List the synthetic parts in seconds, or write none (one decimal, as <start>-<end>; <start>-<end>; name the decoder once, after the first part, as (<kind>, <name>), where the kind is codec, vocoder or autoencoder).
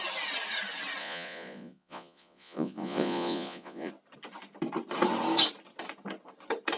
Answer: 1.0-3.9 (vocoder, Vocos)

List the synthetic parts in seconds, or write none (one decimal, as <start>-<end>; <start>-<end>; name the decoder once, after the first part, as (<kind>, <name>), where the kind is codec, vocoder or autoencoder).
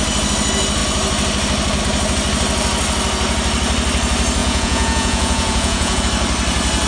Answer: 4.4-6.0 (vocoder, Vocos)